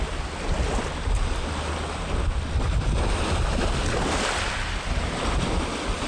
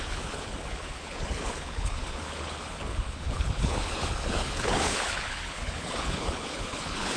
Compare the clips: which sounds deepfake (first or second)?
second